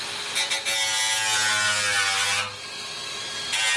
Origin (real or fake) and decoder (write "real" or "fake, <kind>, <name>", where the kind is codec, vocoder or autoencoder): real